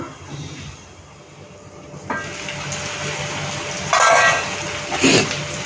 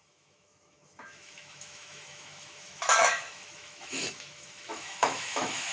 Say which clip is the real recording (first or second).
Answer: first